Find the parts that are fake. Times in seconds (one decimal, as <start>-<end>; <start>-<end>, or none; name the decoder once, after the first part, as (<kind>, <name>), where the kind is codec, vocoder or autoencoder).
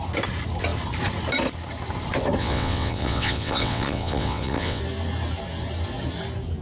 2.4-4.8 (vocoder, WaveNeXt)